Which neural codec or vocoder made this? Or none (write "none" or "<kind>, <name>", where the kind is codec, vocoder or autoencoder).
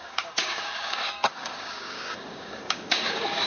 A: codec, DAC